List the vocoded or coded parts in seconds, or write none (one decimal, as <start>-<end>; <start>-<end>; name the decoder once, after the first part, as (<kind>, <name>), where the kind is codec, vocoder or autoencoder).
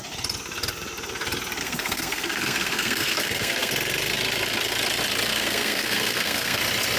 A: 1.6-3.7 (codec, SNAC); 5.3-6.6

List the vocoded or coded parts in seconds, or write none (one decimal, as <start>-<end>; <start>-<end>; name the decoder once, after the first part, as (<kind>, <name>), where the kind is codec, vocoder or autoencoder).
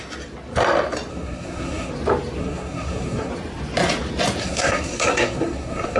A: 1.1-1.9 (codec, SNAC); 2.4-3.3; 4.4-6.0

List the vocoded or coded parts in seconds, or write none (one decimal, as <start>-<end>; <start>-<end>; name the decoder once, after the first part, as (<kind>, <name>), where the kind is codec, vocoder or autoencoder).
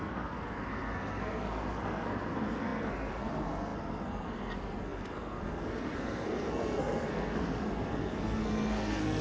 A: 0.0-9.2 (codec, SNAC)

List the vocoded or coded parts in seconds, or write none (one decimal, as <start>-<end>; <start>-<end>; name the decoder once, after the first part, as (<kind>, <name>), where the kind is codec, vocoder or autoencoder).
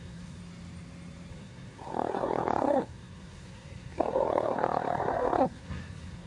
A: 0.0-0.4 (codec, SNAC); 1.3-6.3